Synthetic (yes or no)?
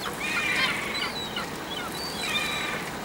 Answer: no